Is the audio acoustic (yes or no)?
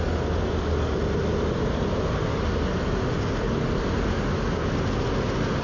yes